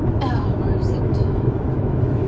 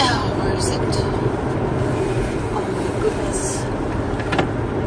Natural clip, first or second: second